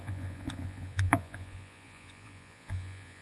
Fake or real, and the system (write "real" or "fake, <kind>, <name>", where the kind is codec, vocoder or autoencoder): fake, vocoder, Vocos